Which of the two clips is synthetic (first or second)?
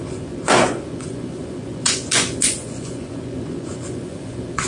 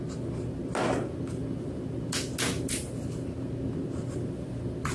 first